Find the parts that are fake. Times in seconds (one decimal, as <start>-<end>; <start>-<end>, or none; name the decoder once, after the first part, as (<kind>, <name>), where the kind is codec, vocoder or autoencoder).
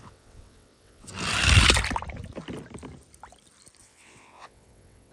0.0-1.1 (vocoder, WaveNeXt); 3.8-5.1